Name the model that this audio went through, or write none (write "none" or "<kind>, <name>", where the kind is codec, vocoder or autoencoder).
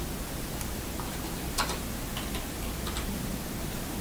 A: none